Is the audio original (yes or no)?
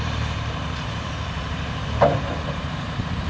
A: no